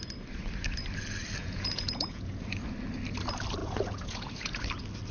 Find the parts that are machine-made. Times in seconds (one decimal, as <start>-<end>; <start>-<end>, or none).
1.4-2.4; 3.6-4.6